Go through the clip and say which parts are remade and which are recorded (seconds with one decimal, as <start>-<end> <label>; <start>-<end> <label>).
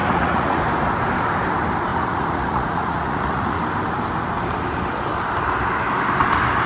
0.0-0.6 remade; 0.6-1.9 recorded; 1.9-3.6 remade; 3.6-6.7 recorded